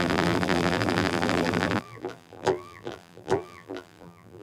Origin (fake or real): fake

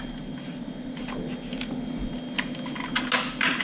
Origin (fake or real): real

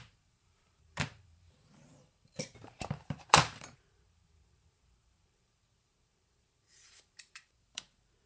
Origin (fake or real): fake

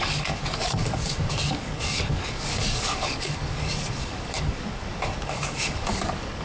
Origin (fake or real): fake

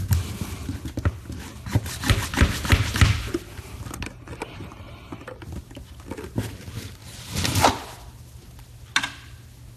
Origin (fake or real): real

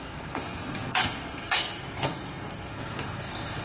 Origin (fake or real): fake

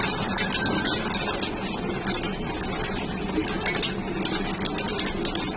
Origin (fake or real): real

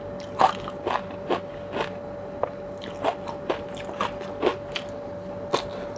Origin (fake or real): real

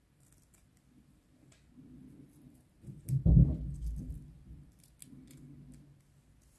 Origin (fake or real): real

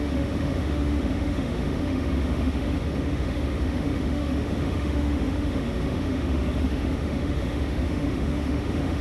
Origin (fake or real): fake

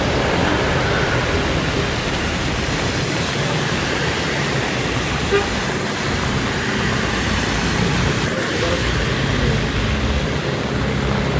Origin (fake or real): real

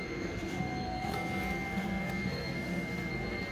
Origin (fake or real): fake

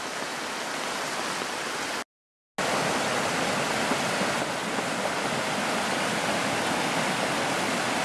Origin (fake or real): real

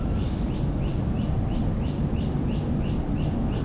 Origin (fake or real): real